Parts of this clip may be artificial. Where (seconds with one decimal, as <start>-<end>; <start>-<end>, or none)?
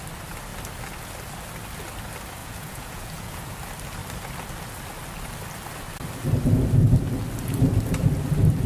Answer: 2.4-3.5